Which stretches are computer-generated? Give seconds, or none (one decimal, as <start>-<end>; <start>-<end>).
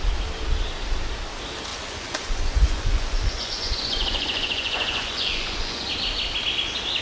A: 1.7-5.9